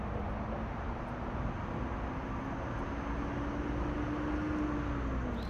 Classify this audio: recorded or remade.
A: recorded